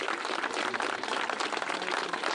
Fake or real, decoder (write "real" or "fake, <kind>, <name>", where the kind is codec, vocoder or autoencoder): real